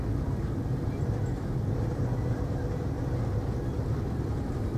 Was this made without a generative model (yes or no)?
yes